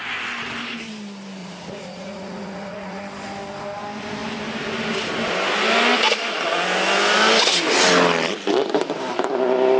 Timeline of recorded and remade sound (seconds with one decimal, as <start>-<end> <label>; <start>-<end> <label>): 0.0-1.4 recorded; 1.4-3.0 remade; 3.0-9.8 recorded